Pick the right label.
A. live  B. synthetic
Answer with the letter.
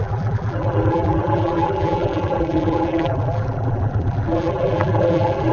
B